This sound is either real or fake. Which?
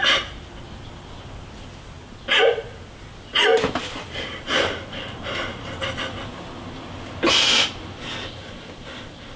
real